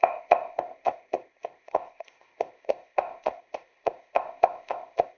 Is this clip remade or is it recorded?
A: remade